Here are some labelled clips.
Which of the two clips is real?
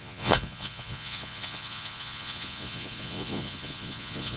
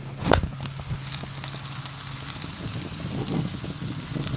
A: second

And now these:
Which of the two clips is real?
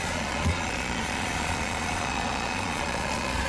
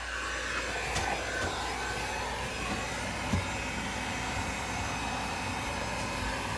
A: second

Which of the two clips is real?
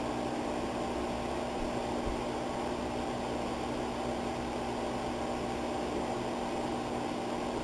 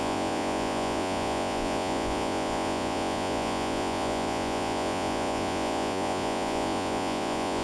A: first